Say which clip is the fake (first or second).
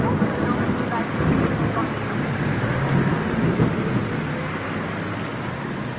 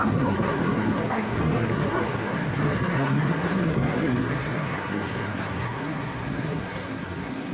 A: second